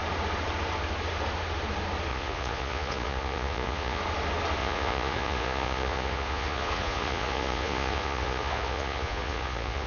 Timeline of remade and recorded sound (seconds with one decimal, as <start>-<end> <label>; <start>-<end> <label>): 0.0-2.1 recorded; 2.1-4.0 remade; 4.0-4.6 recorded; 4.6-9.9 remade